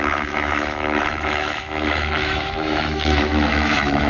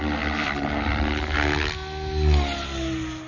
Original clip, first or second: second